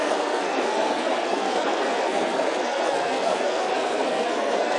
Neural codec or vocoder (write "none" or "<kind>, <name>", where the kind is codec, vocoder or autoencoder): codec, SNAC